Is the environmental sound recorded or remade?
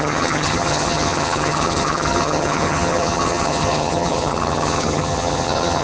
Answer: remade